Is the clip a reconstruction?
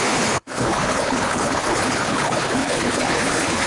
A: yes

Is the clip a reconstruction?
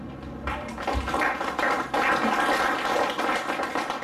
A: no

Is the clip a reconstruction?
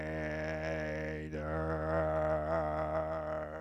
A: yes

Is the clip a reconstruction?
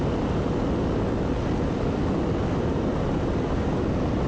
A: no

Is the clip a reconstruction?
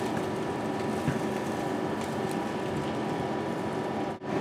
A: no